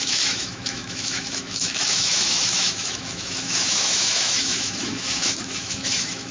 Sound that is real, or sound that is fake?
fake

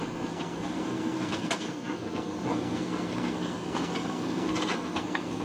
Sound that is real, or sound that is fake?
fake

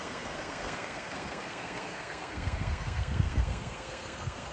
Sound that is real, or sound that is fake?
fake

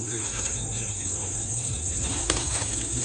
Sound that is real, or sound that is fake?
fake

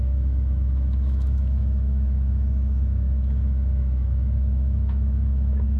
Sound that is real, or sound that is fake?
fake